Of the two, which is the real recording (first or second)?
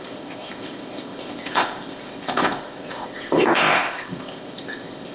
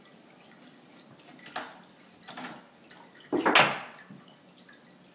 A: second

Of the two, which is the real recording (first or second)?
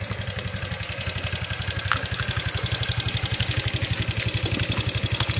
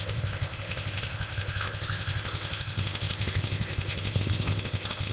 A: first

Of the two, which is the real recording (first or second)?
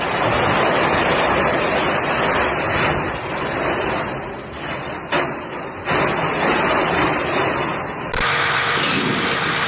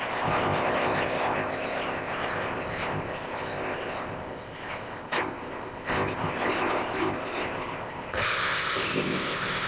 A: first